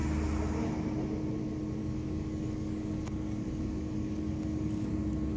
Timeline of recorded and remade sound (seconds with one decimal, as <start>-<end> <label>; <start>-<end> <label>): 0.0-1.8 recorded; 1.8-5.0 remade; 5.0-5.4 recorded